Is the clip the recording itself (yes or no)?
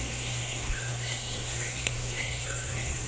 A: no